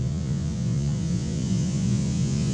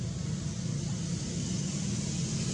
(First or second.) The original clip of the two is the second